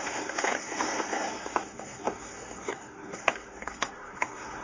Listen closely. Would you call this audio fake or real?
fake